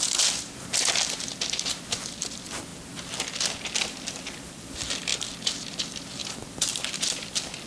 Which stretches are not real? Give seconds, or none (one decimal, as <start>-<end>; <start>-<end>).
0.0-2.7; 4.1-5.1; 5.7-7.7